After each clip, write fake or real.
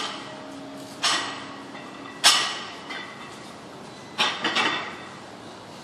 real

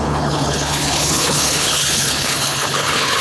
fake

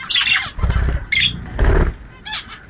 real